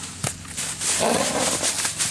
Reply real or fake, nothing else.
real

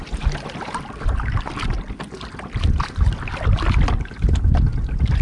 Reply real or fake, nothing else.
real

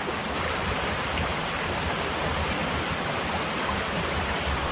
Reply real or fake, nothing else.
real